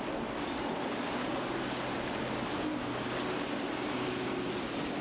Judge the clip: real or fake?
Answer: fake